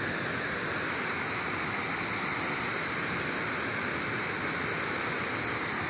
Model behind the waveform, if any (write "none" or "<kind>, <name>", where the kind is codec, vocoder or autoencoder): none